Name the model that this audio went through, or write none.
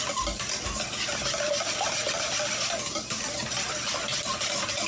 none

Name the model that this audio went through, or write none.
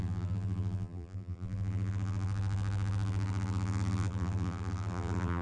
vocoder, BigVGAN v2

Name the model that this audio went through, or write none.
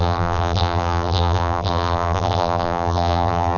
vocoder, BigVGAN v2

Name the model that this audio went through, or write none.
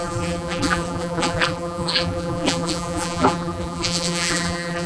vocoder, BigVGAN v2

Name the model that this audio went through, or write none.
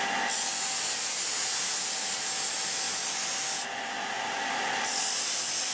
none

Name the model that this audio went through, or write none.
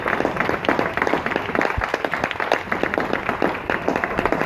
none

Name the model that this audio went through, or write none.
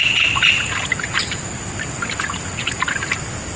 none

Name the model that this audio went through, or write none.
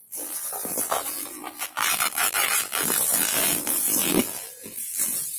vocoder, BigVGAN v2